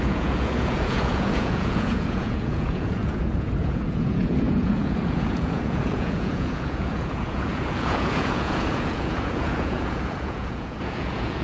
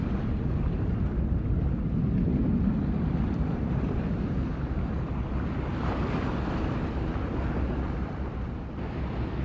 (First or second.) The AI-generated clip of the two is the first